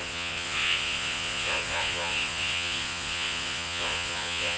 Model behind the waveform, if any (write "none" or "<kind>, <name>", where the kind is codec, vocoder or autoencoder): vocoder, Vocos